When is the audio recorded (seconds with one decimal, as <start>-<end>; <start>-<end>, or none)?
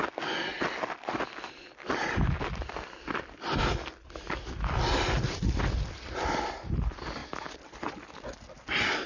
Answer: 0.0-9.1